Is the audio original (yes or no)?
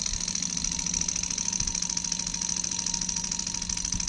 yes